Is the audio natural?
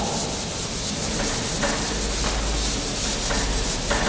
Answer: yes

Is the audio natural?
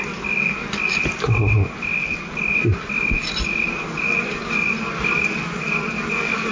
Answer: yes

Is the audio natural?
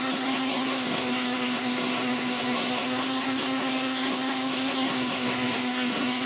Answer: no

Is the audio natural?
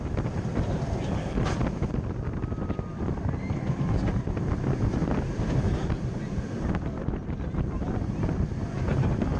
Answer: yes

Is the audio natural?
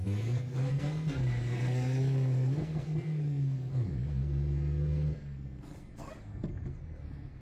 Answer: no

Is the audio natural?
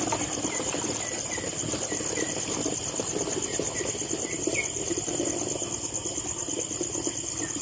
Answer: yes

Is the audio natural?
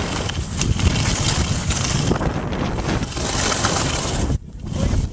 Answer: yes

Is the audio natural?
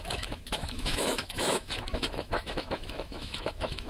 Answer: no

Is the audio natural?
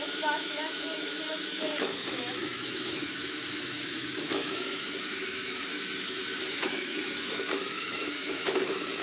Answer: no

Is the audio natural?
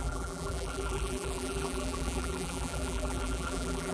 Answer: no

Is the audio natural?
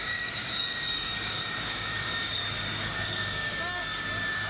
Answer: no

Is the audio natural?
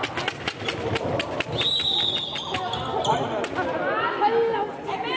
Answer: yes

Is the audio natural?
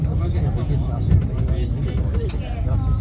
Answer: yes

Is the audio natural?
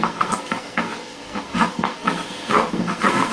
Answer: no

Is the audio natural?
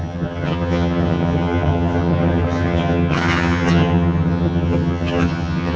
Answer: no